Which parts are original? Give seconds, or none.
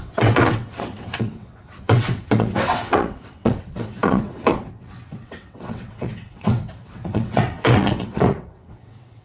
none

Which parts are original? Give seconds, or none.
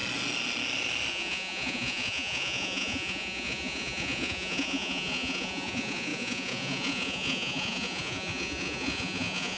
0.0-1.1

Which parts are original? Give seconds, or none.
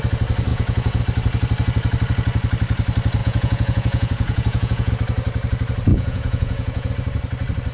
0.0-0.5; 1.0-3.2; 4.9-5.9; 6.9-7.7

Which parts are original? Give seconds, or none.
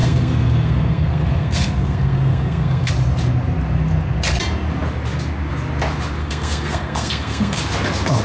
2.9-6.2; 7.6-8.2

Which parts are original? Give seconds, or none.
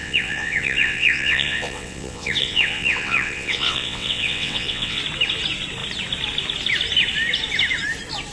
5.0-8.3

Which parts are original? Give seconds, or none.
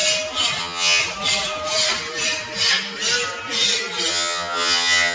0.0-0.6; 1.0-4.1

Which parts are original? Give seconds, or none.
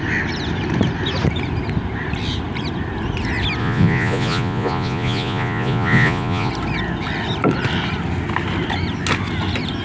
0.0-3.6; 6.5-9.8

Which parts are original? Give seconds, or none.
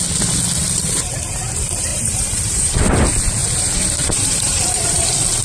0.0-1.9; 2.7-3.4; 5.0-5.4